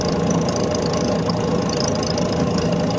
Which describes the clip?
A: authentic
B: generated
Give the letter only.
A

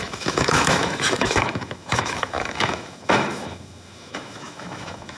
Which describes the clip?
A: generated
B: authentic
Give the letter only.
A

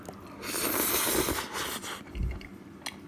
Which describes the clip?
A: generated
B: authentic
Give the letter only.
B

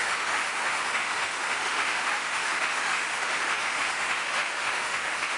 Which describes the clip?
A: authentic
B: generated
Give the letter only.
B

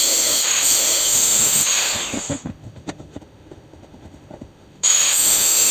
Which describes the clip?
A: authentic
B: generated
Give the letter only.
B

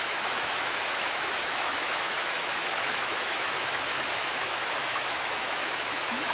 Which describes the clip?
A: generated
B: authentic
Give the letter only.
A